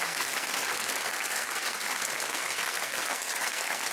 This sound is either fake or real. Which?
fake